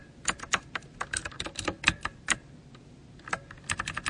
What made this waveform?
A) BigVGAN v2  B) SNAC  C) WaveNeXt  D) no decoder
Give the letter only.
A